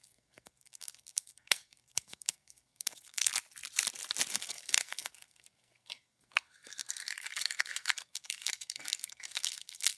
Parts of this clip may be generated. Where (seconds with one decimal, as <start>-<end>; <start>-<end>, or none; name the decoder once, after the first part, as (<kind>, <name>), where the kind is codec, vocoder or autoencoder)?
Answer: 0.0-3.3 (codec, SNAC); 4.3-10.0